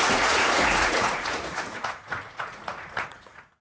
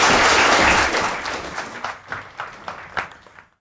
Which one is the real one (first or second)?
second